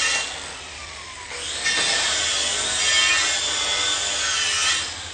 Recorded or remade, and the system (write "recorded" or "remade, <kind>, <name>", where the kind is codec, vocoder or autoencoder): recorded